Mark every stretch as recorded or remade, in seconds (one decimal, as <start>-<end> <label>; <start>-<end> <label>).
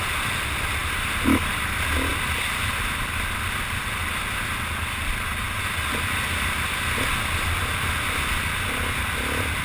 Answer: 0.0-9.6 recorded